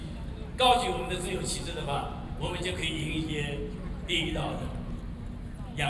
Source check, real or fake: real